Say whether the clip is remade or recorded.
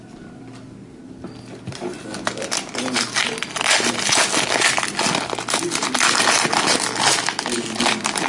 recorded